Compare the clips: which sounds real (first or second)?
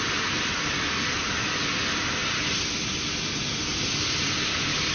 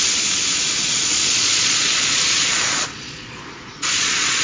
first